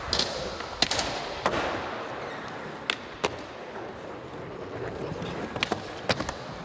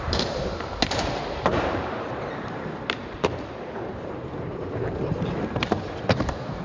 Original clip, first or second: first